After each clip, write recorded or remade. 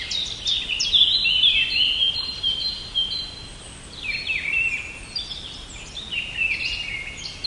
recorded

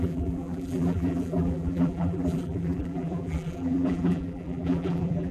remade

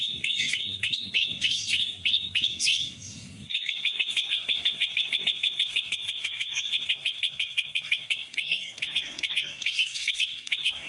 remade